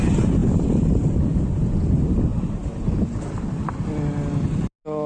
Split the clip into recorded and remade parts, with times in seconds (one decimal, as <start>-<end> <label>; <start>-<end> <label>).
0.0-5.1 recorded